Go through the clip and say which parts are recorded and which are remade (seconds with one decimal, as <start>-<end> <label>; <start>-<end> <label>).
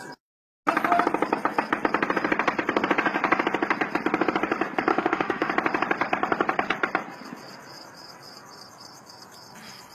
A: 0.0-4.9 recorded; 4.9-5.5 remade; 5.5-9.9 recorded